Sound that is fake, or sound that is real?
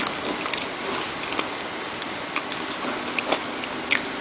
real